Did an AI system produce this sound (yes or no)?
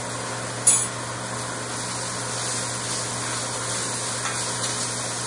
no